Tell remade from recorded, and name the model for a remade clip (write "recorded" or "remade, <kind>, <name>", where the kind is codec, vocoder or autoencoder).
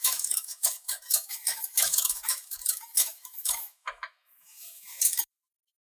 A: remade, autoencoder, DAC-VAE